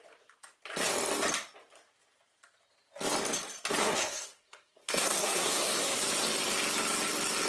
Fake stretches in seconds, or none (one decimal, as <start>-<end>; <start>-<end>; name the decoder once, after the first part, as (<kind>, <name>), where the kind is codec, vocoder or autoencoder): 3.8-6.0 (codec, SNAC)